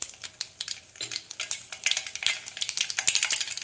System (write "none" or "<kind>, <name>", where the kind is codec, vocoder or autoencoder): none